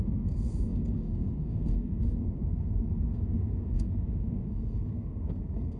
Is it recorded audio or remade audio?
remade